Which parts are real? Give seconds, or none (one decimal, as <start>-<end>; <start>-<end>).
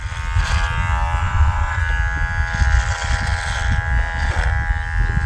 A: 0.0-1.2; 1.8-5.3